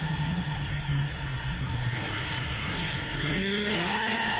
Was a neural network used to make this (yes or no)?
yes